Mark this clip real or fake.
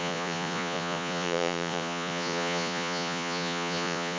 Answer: fake